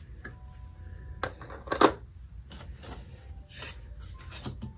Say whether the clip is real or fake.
real